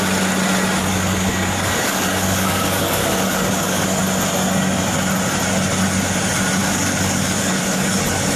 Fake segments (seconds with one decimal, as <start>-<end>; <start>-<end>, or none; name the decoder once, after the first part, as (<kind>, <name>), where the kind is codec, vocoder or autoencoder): 0.8-4.0 (codec, DAC); 6.6-8.0